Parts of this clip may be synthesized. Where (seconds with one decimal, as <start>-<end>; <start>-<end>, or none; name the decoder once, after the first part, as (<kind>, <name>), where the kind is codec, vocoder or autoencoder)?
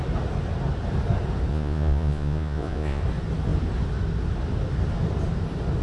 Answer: 1.5-3.0 (vocoder, Vocos)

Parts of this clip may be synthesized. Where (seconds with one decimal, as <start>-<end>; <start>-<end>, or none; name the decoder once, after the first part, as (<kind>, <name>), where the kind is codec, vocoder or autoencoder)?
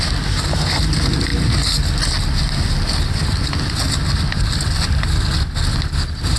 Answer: none